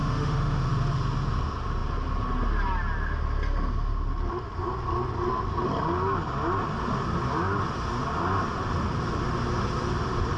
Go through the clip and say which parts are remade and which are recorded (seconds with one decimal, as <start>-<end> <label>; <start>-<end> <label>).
0.0-0.7 remade; 0.7-10.4 recorded

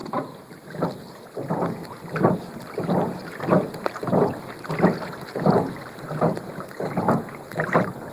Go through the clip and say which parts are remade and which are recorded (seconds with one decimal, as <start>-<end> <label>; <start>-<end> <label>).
0.0-8.1 recorded

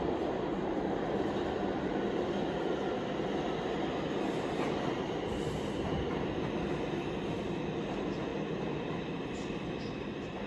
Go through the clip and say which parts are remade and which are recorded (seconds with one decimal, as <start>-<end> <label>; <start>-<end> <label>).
0.0-10.5 recorded